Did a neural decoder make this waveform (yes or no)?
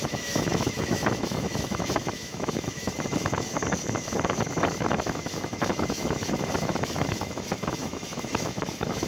yes